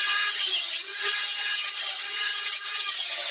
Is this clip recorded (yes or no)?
no